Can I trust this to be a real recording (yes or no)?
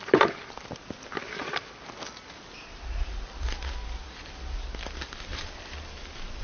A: yes